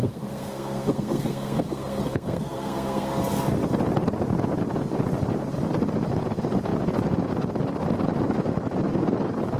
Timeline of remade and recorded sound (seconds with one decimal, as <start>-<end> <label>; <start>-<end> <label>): 0.0-3.1 remade; 3.1-9.6 recorded